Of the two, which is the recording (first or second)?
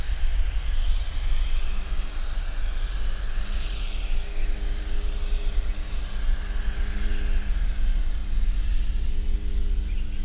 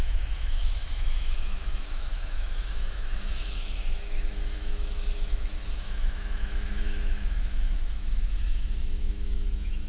first